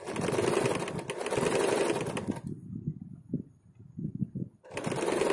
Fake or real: real